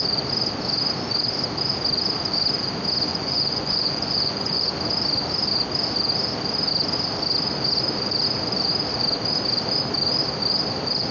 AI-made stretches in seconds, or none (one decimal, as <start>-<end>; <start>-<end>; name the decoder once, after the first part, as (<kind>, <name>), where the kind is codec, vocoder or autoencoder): 3.1-4.7 (vocoder, Vocos)